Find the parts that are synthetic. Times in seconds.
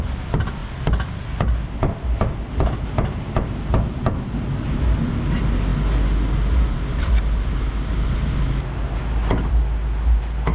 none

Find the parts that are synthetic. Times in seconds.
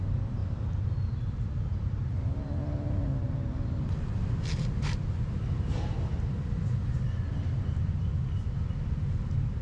none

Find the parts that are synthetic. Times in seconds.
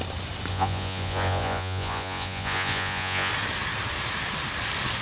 0.5-3.3 (vocoder, Vocos)